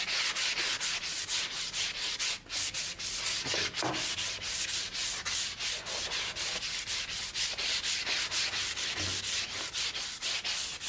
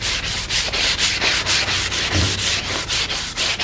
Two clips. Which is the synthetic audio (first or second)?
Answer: second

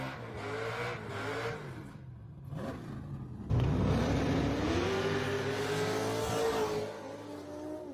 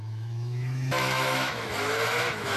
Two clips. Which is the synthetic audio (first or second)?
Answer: second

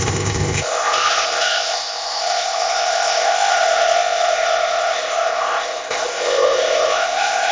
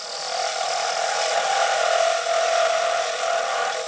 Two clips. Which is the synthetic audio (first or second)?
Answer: first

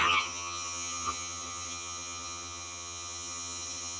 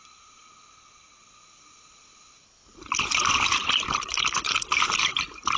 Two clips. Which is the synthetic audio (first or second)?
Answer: first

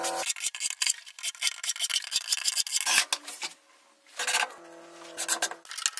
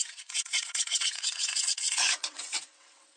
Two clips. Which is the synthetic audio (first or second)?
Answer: second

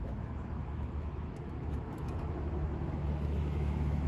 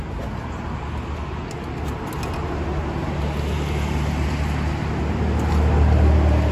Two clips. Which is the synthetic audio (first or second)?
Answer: first